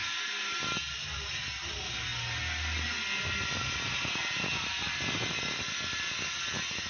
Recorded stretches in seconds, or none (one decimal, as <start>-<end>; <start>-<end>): 0.0-6.9